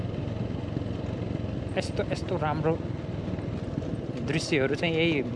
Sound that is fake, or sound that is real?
real